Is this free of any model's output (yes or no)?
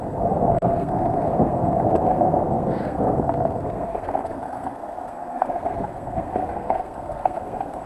no